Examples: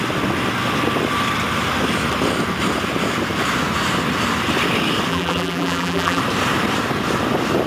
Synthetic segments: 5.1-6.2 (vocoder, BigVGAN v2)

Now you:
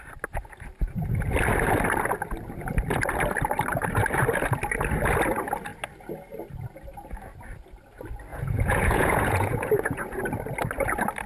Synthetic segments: 8.3-10.2 (vocoder, Vocos)